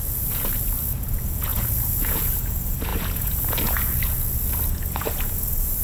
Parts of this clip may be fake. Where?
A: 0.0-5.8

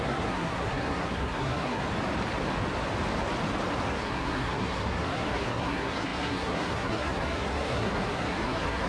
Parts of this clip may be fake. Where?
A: 0.0-1.8; 3.9-8.9

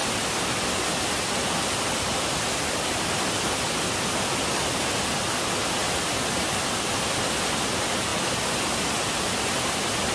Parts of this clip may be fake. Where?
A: none